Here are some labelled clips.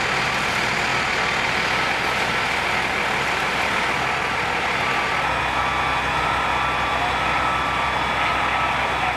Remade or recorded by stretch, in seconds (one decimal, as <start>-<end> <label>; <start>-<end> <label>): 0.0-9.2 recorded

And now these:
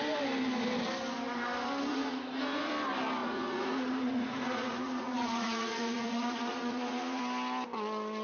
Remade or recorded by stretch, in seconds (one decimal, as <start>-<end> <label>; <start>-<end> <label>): 0.0-1.9 recorded; 1.9-2.7 remade; 2.7-3.2 recorded; 3.2-7.2 remade; 7.2-8.2 recorded

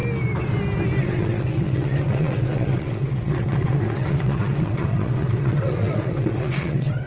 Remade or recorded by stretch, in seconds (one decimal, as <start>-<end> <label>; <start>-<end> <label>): 0.0-1.0 recorded; 1.0-7.1 remade

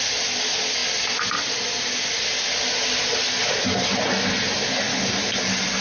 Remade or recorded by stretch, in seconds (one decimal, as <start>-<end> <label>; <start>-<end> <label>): 0.0-5.8 recorded

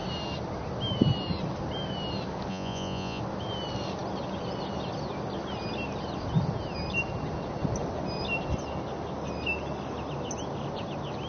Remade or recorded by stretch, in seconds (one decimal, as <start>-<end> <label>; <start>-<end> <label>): 0.0-2.5 recorded; 2.5-3.2 remade; 3.2-11.3 recorded

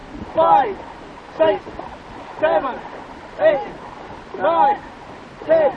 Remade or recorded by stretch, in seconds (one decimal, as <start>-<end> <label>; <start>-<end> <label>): 0.0-5.8 recorded

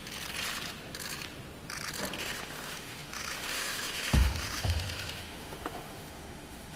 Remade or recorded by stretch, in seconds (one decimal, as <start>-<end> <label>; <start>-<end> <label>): 0.0-2.2 recorded; 2.2-6.8 remade